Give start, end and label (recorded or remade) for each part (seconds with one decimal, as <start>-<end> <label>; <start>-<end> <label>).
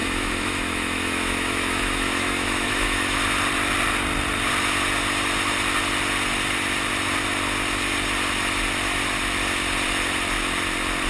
0.0-3.2 remade; 3.2-11.1 recorded